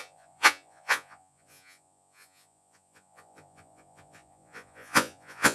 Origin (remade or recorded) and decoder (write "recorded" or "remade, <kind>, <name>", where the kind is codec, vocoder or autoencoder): remade, vocoder, Vocos